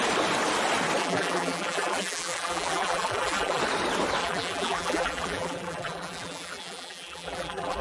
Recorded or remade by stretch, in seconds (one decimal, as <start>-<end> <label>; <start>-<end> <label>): 0.0-1.0 recorded; 1.0-3.6 remade; 3.6-4.2 recorded; 4.2-7.8 remade

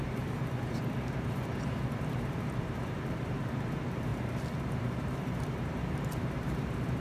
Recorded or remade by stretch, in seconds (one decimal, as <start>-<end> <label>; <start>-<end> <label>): 0.0-4.1 remade; 4.1-4.7 recorded; 4.7-7.0 remade

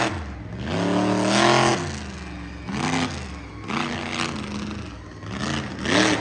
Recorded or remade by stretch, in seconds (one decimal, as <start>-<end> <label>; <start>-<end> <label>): 0.0-6.2 recorded

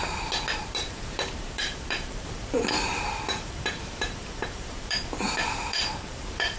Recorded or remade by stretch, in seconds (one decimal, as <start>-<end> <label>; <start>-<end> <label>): 0.0-0.6 recorded; 0.6-6.6 remade

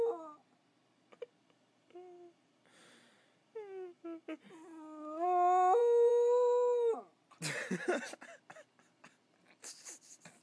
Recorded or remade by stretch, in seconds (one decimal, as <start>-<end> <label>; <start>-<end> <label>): 0.0-5.8 recorded; 5.8-7.2 remade; 7.2-10.4 recorded

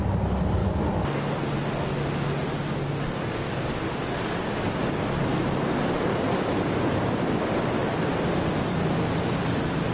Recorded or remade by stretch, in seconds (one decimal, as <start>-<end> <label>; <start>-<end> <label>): 0.0-9.9 recorded